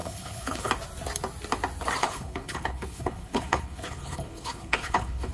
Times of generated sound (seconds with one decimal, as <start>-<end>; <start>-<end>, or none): 0.0-0.7; 2.0-5.3